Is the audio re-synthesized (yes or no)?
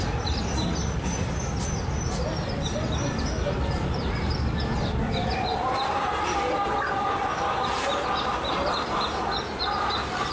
yes